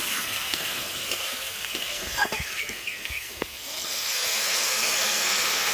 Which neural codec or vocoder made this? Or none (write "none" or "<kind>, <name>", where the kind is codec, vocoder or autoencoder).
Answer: codec, SNAC